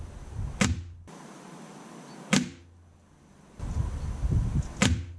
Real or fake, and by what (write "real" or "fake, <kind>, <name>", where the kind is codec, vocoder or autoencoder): real